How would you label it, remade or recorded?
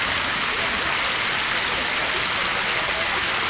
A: recorded